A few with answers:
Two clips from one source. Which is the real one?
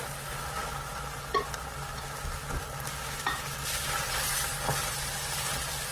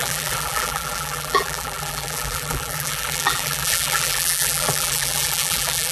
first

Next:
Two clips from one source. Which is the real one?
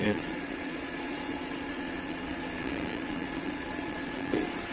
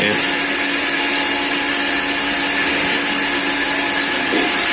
second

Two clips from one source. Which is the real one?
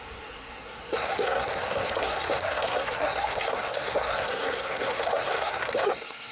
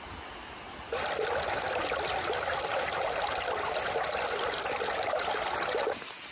second